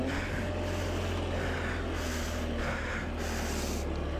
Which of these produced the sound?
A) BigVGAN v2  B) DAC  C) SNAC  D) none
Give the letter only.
D